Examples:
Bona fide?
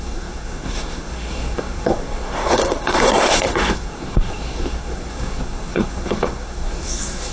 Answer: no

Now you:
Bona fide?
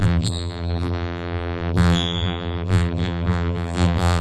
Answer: no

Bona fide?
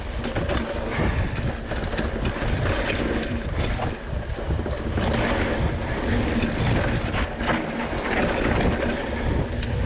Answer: yes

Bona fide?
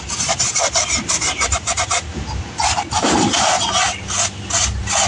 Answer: yes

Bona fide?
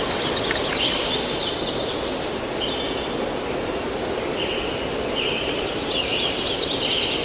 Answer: yes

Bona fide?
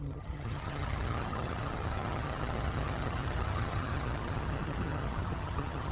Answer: no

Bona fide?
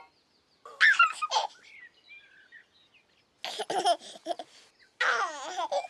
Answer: yes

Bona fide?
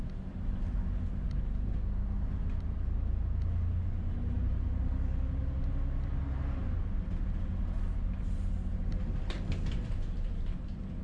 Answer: yes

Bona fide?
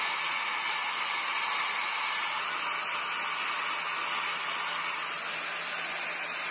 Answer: yes